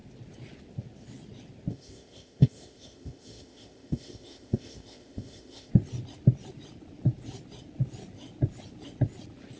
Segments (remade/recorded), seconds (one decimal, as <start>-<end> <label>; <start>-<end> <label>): 0.0-1.7 recorded; 1.7-5.7 remade; 5.7-9.6 recorded